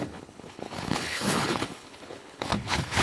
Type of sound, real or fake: fake